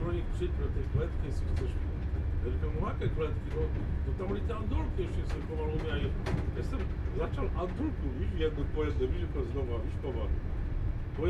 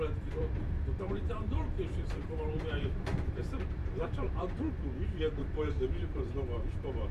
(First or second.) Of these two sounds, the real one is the first